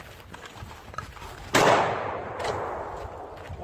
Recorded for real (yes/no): yes